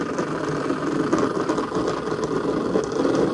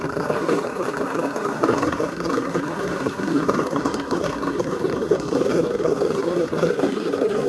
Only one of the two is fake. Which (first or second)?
second